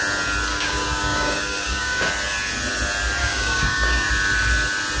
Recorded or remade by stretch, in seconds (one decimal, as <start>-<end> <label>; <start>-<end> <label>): 0.0-0.5 recorded; 0.5-2.1 remade; 2.1-3.2 recorded; 3.2-4.1 remade; 4.1-5.0 recorded